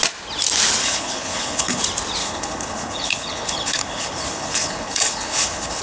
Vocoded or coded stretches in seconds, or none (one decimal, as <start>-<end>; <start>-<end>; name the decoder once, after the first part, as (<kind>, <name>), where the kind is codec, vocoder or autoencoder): 0.8-1.8 (codec, HILCodec); 2.2-5.8